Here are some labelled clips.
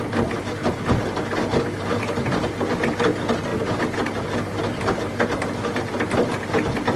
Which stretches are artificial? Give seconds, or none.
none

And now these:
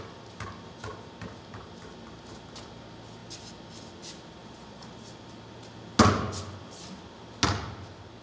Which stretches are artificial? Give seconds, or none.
4.4-4.9 (vocoder, Vocos)

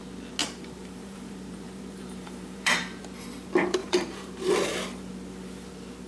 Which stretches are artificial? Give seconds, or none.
0.4-3.0 (vocoder, BigVGAN v2); 3.8-4.5

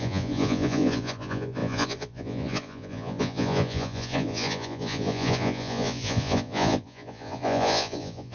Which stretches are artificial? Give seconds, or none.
0.0-8.3 (vocoder, Vocos)